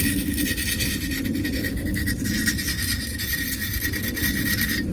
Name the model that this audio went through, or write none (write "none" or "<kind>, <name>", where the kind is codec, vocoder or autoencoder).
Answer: none